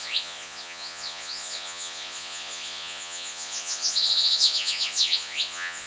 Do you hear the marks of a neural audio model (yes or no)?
yes